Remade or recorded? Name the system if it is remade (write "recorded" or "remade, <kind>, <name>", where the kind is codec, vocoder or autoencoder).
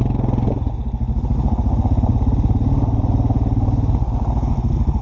recorded